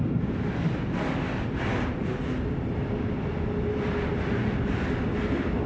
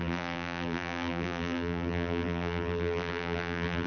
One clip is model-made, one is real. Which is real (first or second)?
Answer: first